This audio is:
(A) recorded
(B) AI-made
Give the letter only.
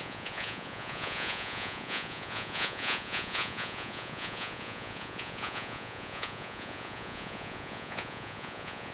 B